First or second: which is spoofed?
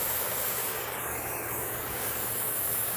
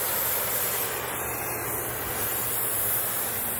first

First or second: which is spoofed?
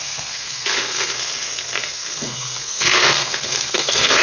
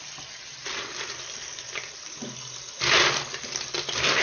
first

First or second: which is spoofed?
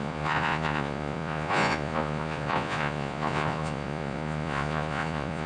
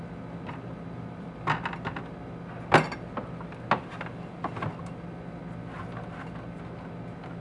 first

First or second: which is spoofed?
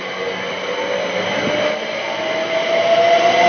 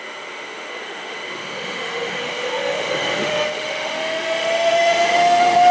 second